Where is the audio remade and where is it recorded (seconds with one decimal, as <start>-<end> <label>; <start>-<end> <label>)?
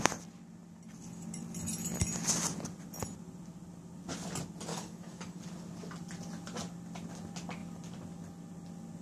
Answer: 0.0-4.7 recorded; 4.7-5.4 remade; 5.4-9.0 recorded